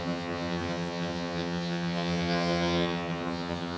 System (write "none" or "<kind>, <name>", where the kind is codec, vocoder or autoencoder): vocoder, HiFi-GAN